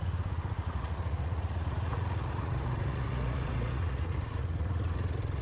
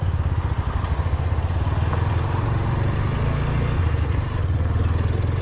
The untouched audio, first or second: second